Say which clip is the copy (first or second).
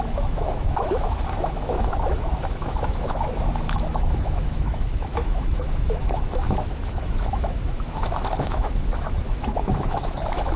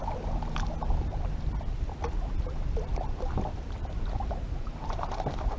first